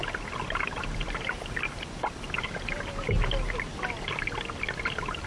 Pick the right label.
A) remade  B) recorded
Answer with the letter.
B